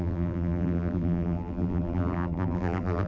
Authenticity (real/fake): fake